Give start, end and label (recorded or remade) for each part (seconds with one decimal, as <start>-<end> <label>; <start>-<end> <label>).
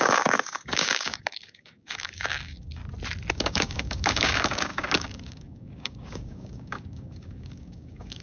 0.0-2.8 remade; 2.8-3.3 recorded; 3.3-8.2 remade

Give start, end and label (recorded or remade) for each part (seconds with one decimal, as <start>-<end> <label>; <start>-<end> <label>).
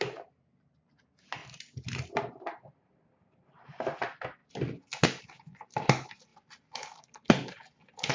0.0-8.1 recorded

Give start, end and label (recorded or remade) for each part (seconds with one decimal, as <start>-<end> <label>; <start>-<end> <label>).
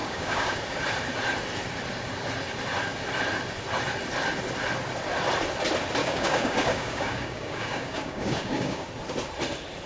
0.0-0.6 remade; 0.6-6.0 recorded; 6.0-8.9 remade; 8.9-9.9 recorded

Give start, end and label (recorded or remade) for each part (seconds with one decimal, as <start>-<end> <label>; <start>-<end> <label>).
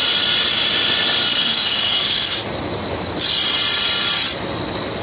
0.0-1.3 recorded; 1.3-2.4 remade; 2.4-5.0 recorded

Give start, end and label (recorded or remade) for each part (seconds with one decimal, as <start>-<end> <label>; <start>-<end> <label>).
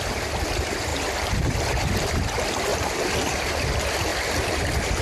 0.0-5.0 recorded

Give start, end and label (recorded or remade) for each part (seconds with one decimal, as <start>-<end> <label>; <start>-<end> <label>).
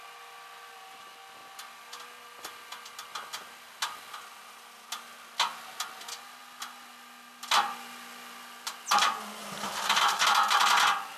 0.0-11.2 recorded